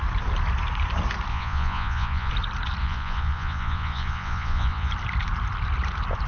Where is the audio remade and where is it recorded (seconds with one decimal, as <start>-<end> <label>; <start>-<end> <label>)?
0.0-1.3 recorded; 1.3-2.3 remade; 2.3-2.8 recorded; 2.8-4.9 remade; 4.9-6.3 recorded